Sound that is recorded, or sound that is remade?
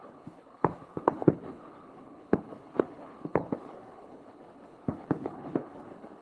remade